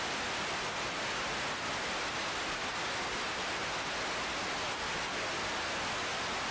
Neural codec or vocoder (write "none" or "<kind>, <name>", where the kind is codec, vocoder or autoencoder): none